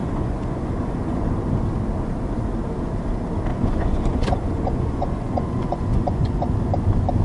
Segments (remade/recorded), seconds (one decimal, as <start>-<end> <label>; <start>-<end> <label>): 0.0-1.3 remade; 1.3-3.5 recorded; 3.5-6.5 remade; 6.5-7.2 recorded